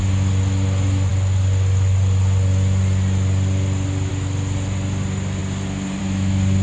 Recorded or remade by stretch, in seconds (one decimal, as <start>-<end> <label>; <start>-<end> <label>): 0.0-6.6 recorded